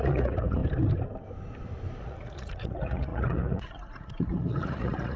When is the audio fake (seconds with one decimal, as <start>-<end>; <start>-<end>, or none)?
0.0-0.6; 2.0-5.2